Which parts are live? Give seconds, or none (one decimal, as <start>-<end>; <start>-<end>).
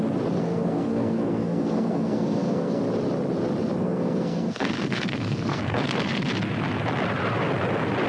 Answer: 0.0-0.4; 2.8-3.8; 6.3-8.1